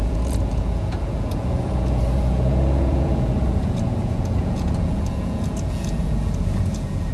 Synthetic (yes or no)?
yes